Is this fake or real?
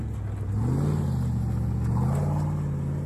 real